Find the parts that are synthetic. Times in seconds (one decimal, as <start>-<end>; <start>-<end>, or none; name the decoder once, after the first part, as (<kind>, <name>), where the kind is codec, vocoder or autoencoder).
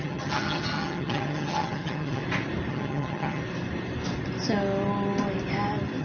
0.0-2.2 (vocoder, HiFi-GAN); 2.7-3.4